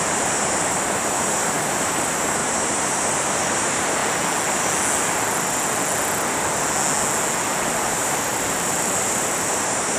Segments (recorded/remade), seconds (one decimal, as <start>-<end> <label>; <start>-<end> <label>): 0.0-4.0 remade; 4.0-7.9 recorded; 7.9-10.0 remade